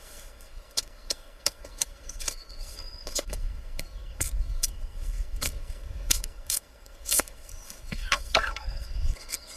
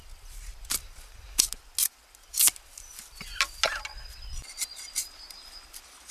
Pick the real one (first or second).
second